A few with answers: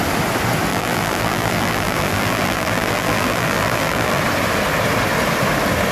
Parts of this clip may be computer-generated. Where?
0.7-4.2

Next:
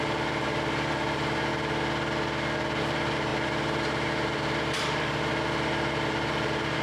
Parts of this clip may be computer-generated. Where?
0.0-1.5; 2.8-6.8

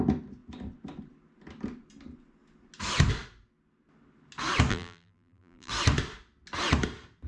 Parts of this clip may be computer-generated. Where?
4.7-5.7

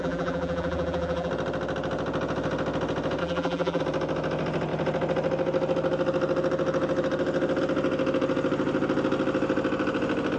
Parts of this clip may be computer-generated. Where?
0.0-1.3; 3.2-3.8

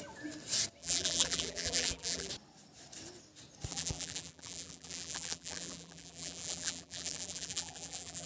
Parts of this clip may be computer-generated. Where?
0.8-2.3; 3.7-8.3

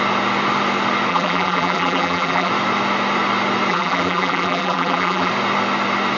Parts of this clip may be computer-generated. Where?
1.1-2.5; 3.7-5.3